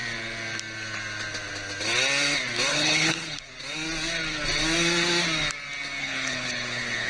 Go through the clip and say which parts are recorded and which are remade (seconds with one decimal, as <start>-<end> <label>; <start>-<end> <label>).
0.0-2.7 recorded; 2.7-3.5 remade; 3.5-6.0 recorded; 6.0-7.1 remade